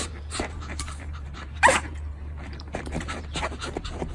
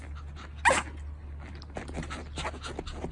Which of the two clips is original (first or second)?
second